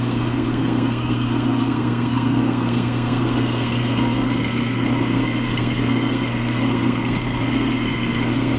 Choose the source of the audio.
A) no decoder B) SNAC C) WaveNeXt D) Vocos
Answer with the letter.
B